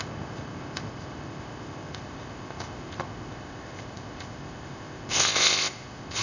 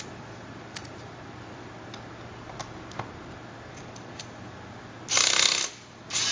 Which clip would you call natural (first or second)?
second